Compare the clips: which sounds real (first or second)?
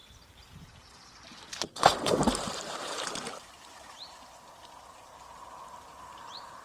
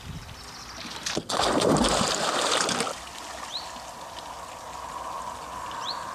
second